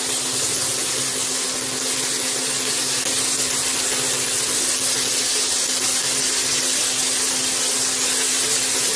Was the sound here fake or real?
real